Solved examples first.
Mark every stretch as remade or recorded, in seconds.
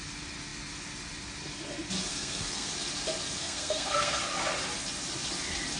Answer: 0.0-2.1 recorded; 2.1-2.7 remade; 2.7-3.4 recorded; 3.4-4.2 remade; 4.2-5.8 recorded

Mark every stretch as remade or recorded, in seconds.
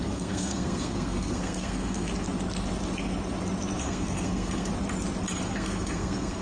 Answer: 0.0-2.1 remade; 2.1-3.8 recorded; 3.8-4.7 remade; 4.7-5.5 recorded; 5.5-6.4 remade